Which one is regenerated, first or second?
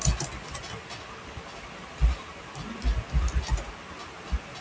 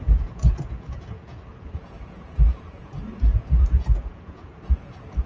second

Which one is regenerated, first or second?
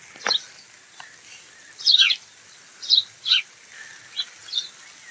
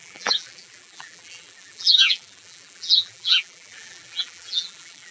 second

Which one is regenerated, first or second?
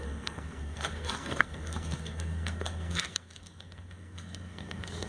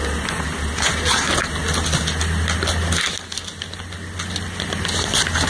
first